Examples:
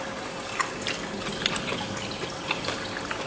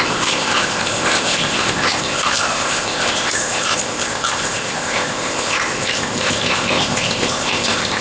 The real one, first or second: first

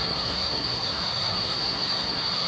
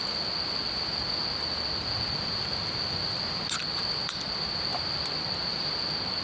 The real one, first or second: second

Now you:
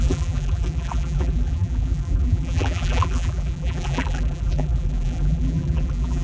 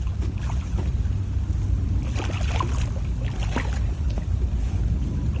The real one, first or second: second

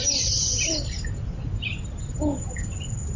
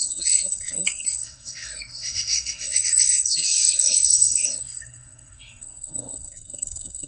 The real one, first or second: first